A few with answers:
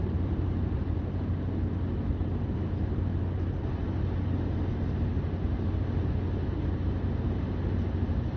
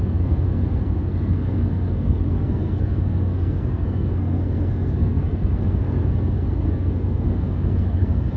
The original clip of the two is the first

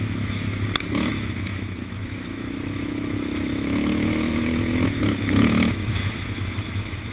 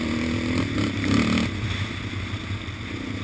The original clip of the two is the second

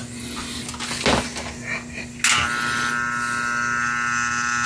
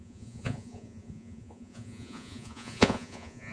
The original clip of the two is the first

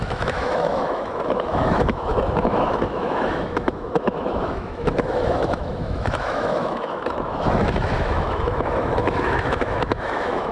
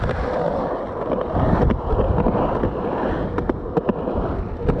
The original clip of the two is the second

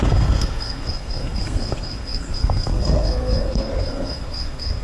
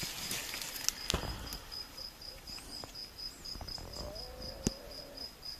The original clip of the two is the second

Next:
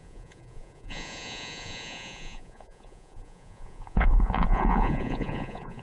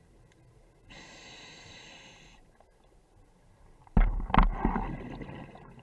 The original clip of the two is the second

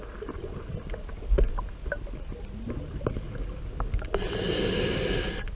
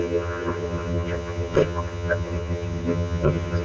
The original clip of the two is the first